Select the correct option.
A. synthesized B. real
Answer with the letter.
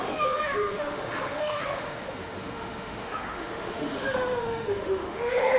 A